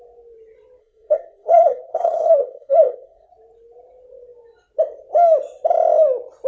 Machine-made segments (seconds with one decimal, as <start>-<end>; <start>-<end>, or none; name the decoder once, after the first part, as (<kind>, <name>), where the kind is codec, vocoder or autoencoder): 0.8-3.3 (codec, SNAC)